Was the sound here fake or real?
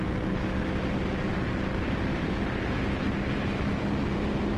real